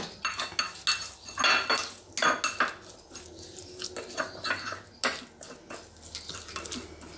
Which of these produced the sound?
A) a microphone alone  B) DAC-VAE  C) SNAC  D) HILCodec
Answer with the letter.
A